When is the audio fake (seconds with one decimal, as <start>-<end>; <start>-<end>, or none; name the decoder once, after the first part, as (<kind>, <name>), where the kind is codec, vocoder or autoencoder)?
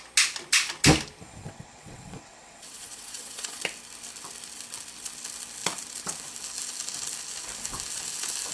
1.4-3.6 (vocoder, WaveNeXt)